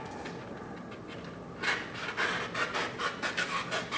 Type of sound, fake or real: real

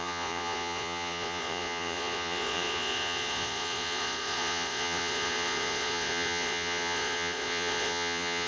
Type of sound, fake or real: fake